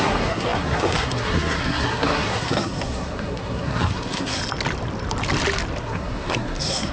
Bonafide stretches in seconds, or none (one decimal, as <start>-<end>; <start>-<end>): 4.4-5.8